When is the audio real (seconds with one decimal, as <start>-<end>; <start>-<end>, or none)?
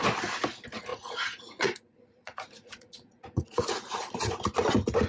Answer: 0.0-0.9; 4.0-5.1